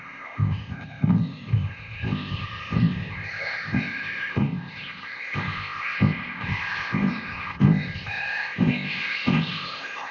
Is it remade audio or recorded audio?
remade